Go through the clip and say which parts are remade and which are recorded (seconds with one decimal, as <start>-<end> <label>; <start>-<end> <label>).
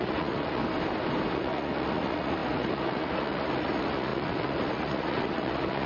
0.0-0.6 remade; 0.6-1.3 recorded; 1.3-5.9 remade